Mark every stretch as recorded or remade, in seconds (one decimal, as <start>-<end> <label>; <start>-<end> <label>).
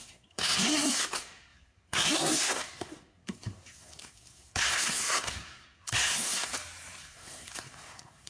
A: 0.0-6.5 remade; 6.5-7.0 recorded; 7.0-8.3 remade